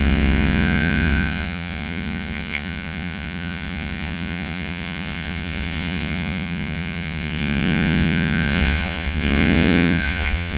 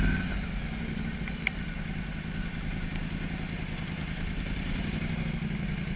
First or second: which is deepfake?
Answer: first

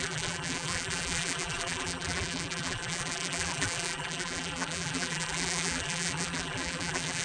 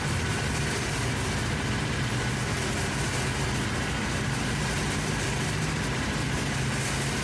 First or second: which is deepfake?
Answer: first